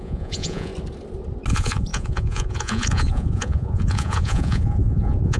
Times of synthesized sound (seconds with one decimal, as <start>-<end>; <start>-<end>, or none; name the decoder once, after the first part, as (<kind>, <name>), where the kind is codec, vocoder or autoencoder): 0.0-0.7 (vocoder, Vocos); 1.5-5.4